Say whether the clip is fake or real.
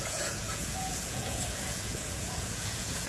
fake